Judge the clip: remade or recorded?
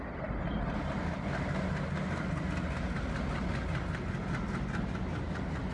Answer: recorded